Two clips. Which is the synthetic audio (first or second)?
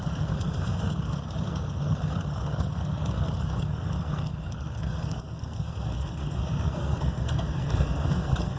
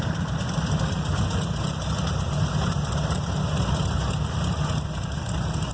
first